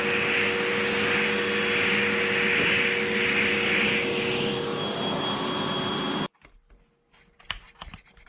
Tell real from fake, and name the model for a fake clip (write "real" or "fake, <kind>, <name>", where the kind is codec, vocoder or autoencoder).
real